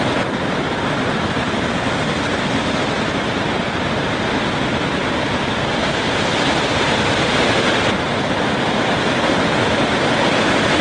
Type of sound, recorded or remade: recorded